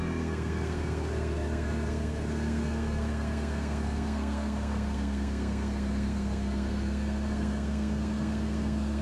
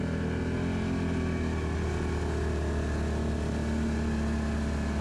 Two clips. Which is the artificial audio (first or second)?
first